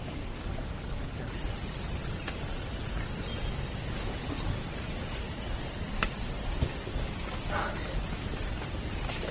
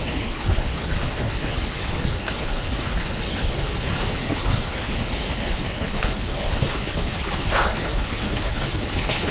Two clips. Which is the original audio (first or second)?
first